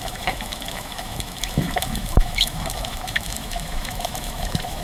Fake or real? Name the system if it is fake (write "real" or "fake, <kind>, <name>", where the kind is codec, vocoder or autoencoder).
fake, autoencoder, DAC-VAE